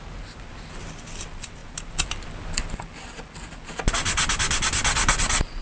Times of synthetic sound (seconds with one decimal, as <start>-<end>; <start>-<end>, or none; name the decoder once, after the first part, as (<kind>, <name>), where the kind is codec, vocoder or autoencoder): none